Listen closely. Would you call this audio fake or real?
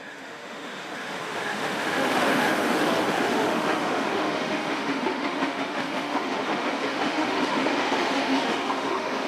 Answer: fake